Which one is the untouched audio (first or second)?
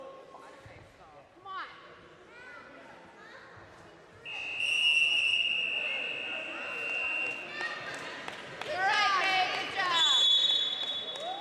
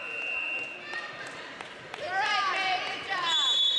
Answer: first